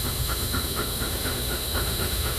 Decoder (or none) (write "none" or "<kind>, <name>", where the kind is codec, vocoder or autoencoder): autoencoder, DAC-VAE